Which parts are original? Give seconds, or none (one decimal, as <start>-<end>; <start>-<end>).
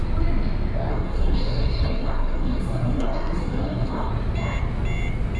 0.0-0.9; 4.1-5.4